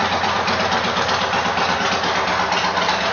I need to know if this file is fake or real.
real